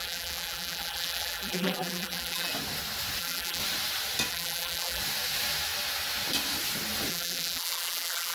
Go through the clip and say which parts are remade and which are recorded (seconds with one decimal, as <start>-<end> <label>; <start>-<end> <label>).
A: 0.0-2.5 remade; 2.5-3.2 recorded; 3.2-3.6 remade; 3.6-4.3 recorded; 4.3-5.0 remade; 5.0-7.1 recorded; 7.1-8.3 remade